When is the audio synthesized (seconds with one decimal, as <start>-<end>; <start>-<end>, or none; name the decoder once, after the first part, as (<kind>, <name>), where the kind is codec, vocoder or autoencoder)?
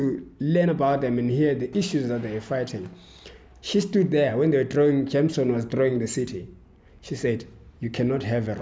5.9-7.5 (vocoder, Vocos)